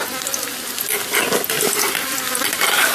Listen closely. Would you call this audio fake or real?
real